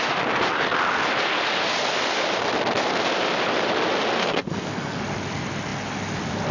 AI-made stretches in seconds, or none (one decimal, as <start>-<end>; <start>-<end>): 4.2-5.0